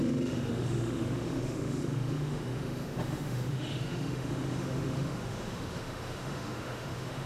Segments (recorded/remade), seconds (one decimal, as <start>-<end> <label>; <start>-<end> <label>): 0.0-7.3 remade